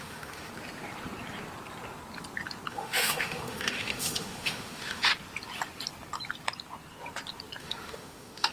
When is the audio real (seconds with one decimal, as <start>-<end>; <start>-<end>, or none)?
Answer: 0.5-2.7; 5.1-7.6